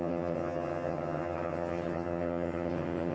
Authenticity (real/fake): fake